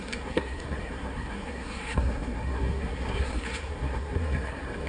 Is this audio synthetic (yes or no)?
yes